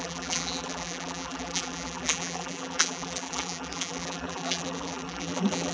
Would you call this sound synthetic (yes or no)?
yes